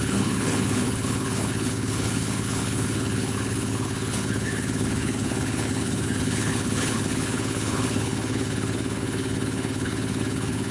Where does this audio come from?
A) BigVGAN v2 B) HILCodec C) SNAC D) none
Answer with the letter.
B